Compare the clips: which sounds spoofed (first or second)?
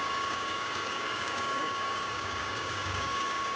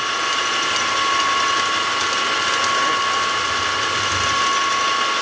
first